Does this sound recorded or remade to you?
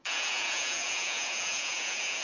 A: remade